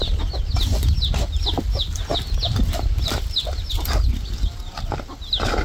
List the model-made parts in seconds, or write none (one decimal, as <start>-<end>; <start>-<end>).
none